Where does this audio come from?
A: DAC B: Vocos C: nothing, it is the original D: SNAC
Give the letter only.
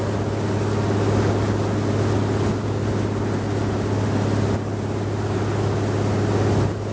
C